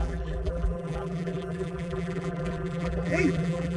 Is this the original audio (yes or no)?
no